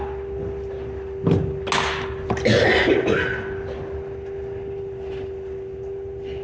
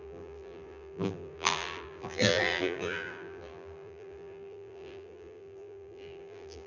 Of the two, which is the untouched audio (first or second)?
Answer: first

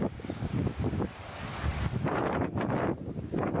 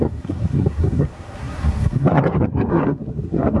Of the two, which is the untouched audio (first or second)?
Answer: first